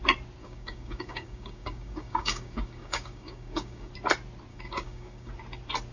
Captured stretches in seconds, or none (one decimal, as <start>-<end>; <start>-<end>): 0.0-0.4; 3.9-4.5; 5.3-5.9